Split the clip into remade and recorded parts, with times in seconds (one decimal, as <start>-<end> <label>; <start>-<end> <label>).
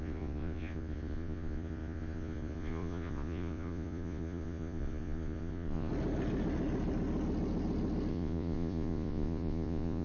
0.0-5.9 remade; 5.9-8.1 recorded; 8.1-10.0 remade